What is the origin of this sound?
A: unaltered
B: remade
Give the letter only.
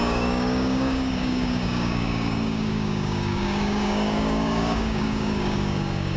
B